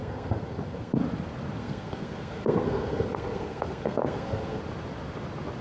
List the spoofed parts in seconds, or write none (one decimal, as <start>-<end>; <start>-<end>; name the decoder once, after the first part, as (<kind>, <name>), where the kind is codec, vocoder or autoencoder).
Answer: 0.0-1.0 (codec, SNAC); 1.6-4.6